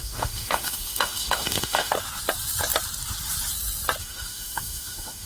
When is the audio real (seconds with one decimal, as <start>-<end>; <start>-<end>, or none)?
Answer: 1.9-4.0